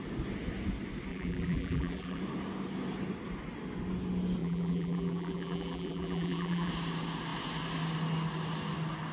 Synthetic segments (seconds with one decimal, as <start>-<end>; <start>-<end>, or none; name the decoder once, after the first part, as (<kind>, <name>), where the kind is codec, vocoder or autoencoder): 1.1-2.2 (vocoder, BigVGAN v2); 4.4-6.7